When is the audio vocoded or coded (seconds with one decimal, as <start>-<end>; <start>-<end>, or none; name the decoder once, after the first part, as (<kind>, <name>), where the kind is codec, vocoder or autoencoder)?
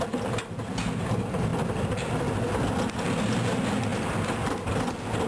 none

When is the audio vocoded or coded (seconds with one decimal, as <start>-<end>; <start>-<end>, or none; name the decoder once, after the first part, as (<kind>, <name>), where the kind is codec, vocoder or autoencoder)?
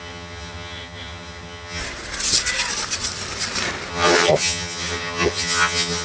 0.0-1.8 (vocoder, HiFi-GAN); 3.9-6.0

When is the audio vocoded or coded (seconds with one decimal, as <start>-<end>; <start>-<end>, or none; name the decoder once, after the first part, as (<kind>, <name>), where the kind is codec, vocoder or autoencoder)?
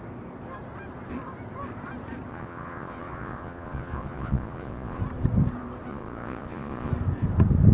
2.3-5.0 (vocoder, Vocos); 5.9-6.9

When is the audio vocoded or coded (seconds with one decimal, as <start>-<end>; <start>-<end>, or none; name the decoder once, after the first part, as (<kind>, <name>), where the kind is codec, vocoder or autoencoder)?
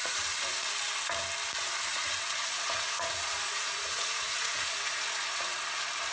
0.0-0.7 (vocoder, Vocos); 1.9-5.6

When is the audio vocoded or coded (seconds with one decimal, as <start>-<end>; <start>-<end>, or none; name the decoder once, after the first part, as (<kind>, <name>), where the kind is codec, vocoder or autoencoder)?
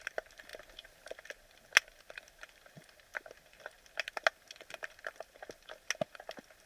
none